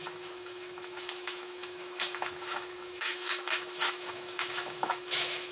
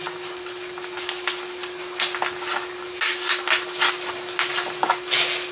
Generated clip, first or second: first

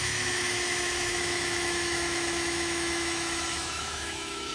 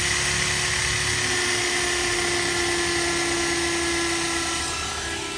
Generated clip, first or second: first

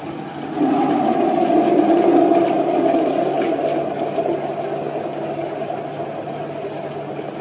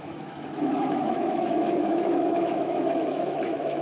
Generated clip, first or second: second